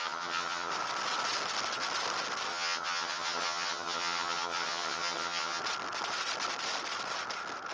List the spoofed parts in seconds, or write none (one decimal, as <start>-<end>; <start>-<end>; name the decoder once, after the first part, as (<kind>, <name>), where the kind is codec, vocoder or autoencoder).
0.0-0.7 (vocoder, HiFi-GAN); 2.5-5.6